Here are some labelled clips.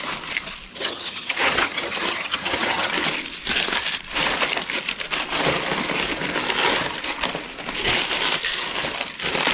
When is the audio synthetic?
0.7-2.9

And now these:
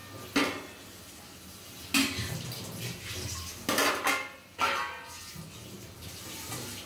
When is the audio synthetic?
none

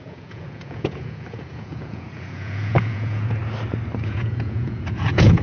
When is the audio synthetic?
0.0-3.4; 4.0-5.4

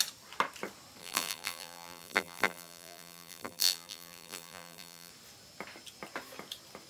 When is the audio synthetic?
1.0-5.1